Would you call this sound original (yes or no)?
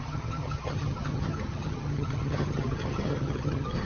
no